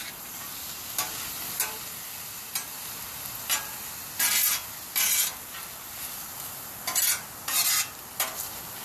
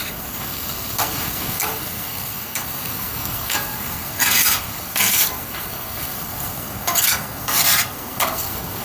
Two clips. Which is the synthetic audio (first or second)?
second